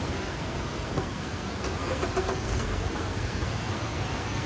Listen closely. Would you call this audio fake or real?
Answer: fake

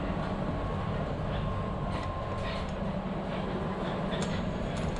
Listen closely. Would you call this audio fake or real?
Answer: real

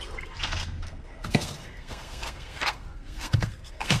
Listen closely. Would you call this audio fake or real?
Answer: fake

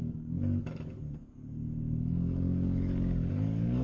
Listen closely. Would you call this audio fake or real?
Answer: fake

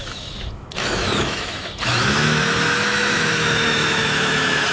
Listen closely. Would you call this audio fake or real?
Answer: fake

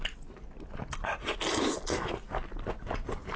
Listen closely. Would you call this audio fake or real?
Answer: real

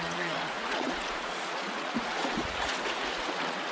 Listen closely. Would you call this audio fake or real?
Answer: fake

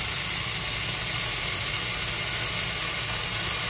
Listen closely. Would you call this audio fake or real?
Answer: real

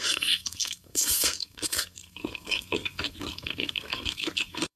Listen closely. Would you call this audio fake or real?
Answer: fake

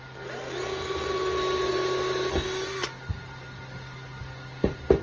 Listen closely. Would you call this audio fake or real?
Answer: real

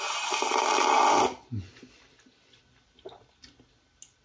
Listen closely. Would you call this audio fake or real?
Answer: real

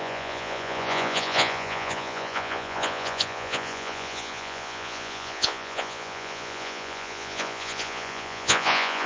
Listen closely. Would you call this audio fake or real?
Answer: fake